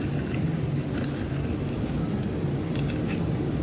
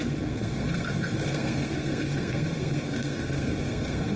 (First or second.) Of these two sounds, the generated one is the second